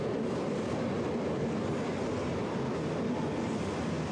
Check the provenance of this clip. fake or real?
real